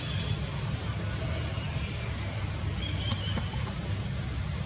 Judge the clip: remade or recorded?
recorded